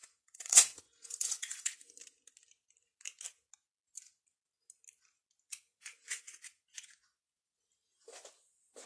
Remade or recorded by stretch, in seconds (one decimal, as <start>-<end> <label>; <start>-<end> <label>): 0.0-1.9 remade; 1.9-5.5 recorded; 5.5-7.6 remade; 7.6-8.9 recorded